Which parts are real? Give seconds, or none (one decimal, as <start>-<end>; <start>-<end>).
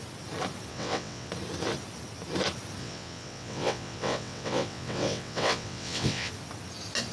0.0-0.7; 1.3-2.8; 6.3-7.1